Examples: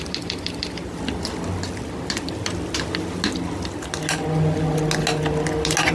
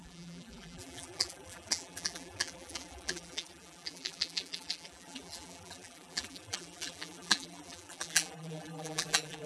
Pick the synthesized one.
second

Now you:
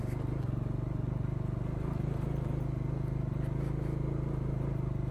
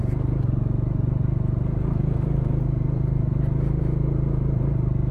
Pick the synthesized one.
second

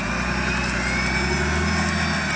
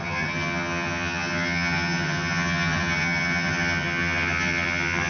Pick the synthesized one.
second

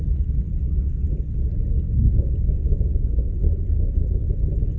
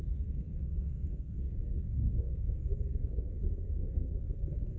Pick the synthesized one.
second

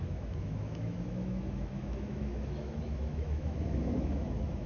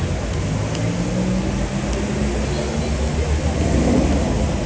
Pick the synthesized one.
first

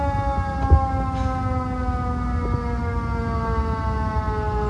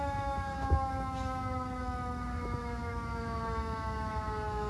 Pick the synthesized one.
second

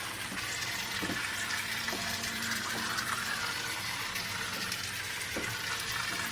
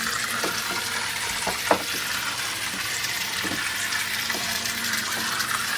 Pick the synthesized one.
second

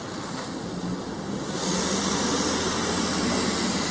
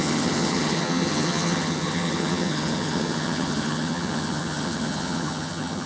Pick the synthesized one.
second